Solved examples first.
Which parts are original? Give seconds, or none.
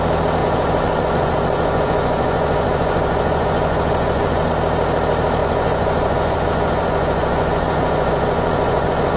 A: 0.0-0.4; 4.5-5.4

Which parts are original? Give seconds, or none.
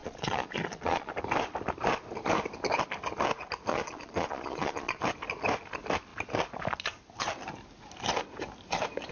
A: 1.1-3.7; 5.0-9.1